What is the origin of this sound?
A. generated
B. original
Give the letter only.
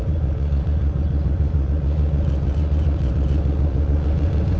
A